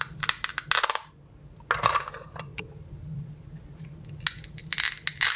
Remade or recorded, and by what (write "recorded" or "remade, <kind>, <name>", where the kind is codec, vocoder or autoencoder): recorded